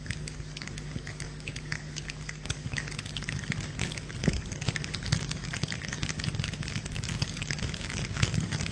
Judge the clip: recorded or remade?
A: remade